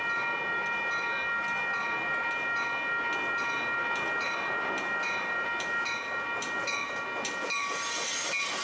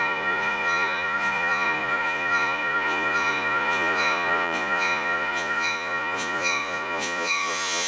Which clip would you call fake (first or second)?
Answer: second